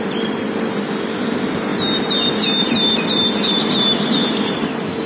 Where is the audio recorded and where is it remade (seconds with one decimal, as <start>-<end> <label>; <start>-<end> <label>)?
0.0-5.1 recorded